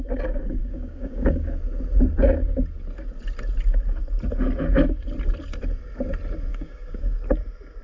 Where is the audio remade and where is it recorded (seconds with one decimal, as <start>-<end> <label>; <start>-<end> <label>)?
0.0-0.6 recorded; 0.6-1.5 remade; 1.5-6.5 recorded; 6.5-7.2 remade; 7.2-7.8 recorded